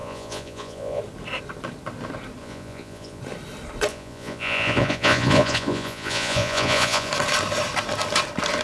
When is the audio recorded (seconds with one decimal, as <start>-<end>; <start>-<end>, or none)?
1.0-2.4; 3.2-3.9; 7.1-8.6